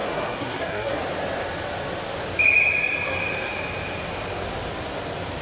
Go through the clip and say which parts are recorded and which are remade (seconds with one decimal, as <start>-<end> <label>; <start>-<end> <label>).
0.0-1.0 remade; 1.0-5.4 recorded